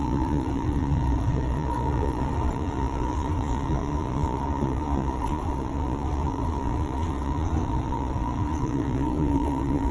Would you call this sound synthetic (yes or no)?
yes